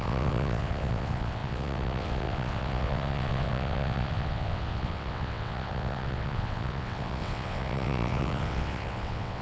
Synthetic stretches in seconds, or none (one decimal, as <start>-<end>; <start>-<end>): 0.0-9.4